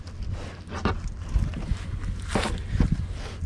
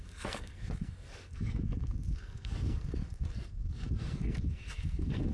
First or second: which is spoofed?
second